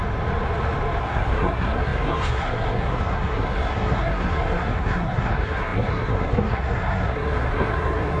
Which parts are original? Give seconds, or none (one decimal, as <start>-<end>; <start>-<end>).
0.0-1.0